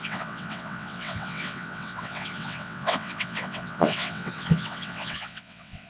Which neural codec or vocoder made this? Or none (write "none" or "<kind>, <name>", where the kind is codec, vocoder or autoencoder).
vocoder, WaveNeXt